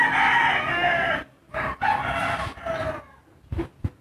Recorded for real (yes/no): yes